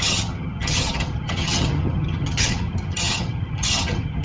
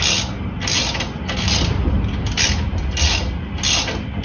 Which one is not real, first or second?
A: first